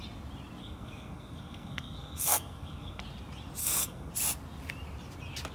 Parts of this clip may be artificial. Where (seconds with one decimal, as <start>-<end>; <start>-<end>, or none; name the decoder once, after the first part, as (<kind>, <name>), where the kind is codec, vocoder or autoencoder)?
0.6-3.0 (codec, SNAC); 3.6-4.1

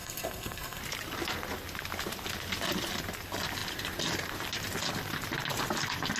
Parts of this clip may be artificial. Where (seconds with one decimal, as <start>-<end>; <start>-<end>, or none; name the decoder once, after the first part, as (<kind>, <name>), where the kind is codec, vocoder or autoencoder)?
0.0-0.8 (codec, SNAC)

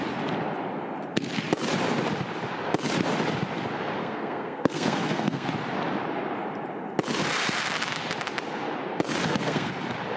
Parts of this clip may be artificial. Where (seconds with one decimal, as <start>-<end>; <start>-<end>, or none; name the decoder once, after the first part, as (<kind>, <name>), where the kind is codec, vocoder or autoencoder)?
4.0-5.5 (codec, SNAC); 9.2-9.7